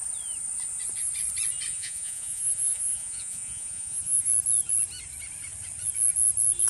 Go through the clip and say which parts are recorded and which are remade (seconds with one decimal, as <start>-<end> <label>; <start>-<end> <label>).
0.0-1.7 recorded; 1.7-4.3 remade; 4.3-6.7 recorded